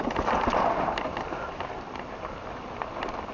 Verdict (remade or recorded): recorded